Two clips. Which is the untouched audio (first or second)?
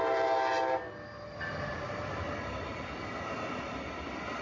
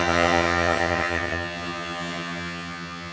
first